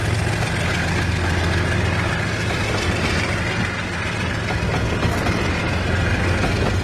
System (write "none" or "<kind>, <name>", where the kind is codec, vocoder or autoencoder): none